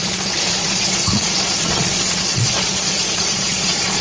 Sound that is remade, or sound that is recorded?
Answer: remade